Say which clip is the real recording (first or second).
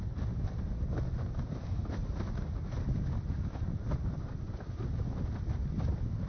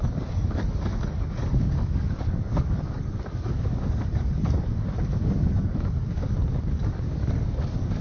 first